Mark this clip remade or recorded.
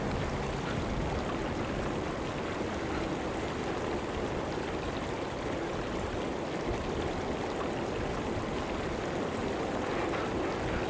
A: recorded